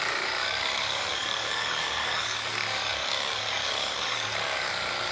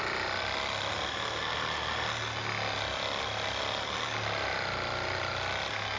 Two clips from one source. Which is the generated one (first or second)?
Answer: first